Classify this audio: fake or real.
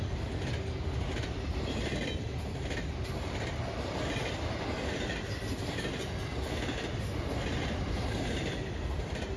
real